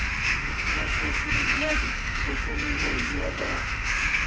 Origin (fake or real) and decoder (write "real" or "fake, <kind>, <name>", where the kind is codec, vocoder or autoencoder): fake, autoencoder, DAC-VAE